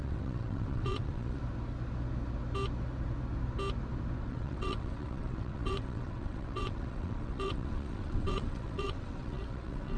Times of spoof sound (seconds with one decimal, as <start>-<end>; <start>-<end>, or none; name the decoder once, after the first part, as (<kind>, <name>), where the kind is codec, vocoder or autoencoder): 0.0-1.4 (vocoder, WaveNeXt); 4.3-10.0